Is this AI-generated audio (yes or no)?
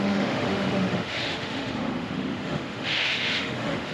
yes